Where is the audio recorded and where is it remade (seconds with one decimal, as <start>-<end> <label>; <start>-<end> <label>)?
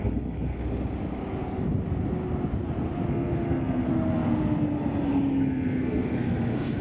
0.0-0.6 remade; 0.6-3.1 recorded; 3.1-3.9 remade; 3.9-5.3 recorded; 5.3-6.8 remade